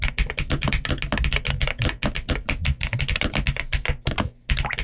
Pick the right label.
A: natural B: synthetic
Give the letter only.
A